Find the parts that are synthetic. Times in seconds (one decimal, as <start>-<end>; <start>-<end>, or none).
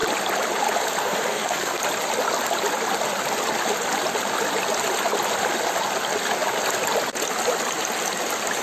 1.0-1.8